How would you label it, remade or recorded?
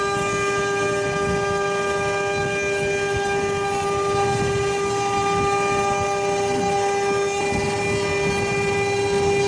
recorded